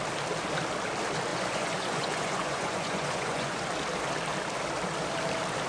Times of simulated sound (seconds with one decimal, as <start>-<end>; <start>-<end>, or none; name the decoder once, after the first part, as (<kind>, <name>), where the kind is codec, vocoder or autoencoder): 1.3-3.6 (vocoder, Vocos)